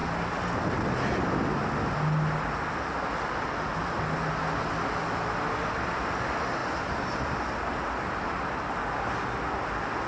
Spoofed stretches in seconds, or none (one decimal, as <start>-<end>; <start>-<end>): none